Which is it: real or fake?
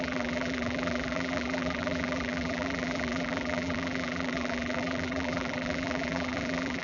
fake